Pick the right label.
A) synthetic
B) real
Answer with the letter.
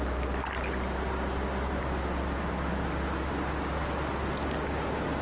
B